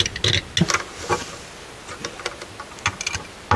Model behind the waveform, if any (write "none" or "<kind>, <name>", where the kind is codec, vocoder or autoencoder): none